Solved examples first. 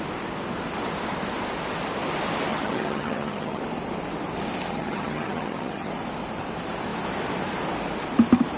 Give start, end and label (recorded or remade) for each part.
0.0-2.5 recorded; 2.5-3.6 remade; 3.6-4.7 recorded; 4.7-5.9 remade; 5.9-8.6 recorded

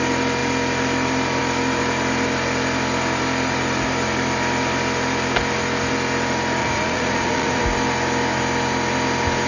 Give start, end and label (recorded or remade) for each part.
0.0-6.6 recorded; 6.6-7.6 remade; 7.6-9.5 recorded

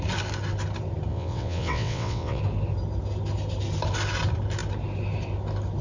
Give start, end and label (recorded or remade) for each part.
0.0-1.1 recorded; 1.1-2.4 remade; 2.4-5.8 recorded

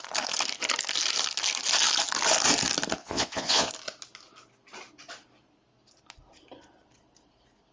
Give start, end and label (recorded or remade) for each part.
0.0-3.0 recorded; 3.0-3.7 remade; 3.7-7.7 recorded

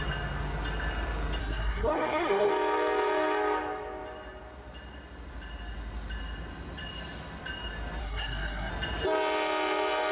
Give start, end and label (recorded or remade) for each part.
0.0-1.4 recorded; 1.4-2.5 remade; 2.5-8.0 recorded; 8.0-8.7 remade; 8.7-10.1 recorded

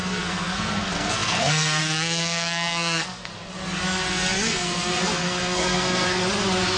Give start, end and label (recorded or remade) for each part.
0.0-3.3 remade; 3.3-4.1 recorded; 4.1-6.2 remade; 6.2-6.8 recorded

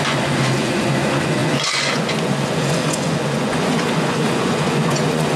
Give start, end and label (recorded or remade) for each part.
0.0-5.4 remade

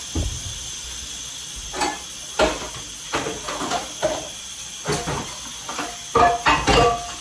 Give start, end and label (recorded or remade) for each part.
0.0-7.2 recorded